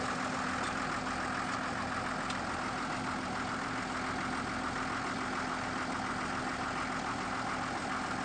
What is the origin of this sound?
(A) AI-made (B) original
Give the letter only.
B